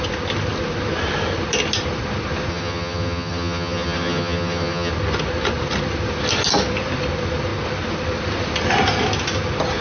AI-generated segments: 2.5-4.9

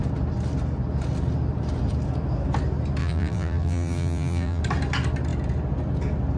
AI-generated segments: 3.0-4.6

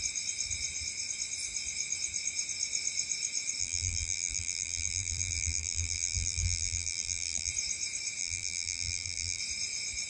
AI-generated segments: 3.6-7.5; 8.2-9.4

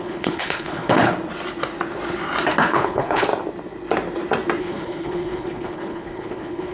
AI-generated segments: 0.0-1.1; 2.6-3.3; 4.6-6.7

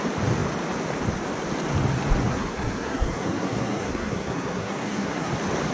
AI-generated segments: 2.3-5.3

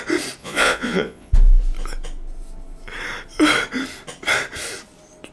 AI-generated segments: 0.4-1.3

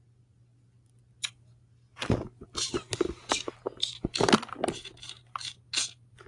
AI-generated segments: none